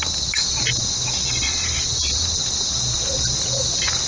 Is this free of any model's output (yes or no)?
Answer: yes